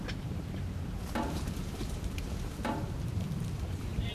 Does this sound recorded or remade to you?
remade